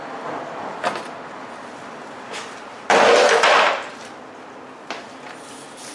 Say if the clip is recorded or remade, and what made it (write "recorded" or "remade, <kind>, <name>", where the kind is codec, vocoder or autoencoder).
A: recorded